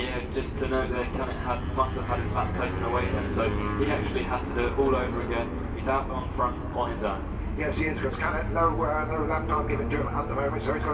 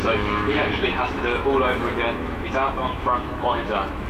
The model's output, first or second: second